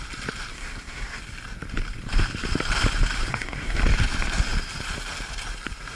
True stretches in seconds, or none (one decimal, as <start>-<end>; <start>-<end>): 0.0-0.5; 1.2-3.3; 3.8-6.0